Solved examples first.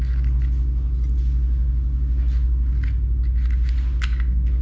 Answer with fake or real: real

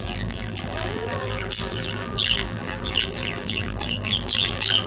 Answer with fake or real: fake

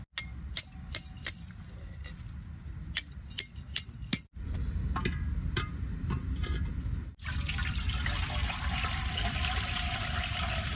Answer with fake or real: real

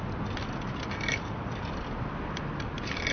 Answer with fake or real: real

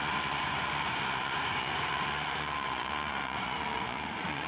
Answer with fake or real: fake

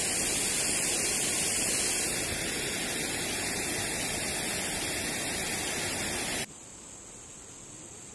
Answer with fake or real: real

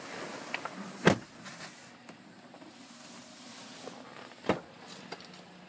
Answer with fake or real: real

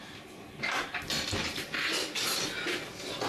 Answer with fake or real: real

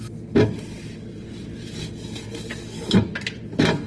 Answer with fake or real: real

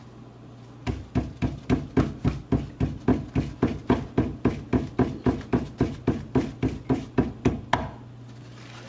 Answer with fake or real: real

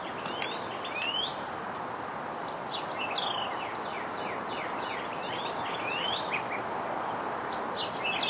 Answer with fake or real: real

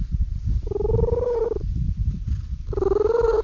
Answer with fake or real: real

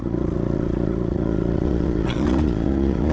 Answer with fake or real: fake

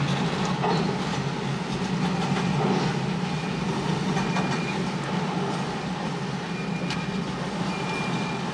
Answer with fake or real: real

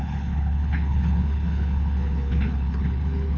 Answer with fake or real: fake